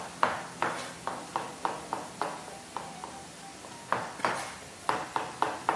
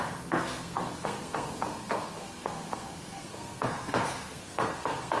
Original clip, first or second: first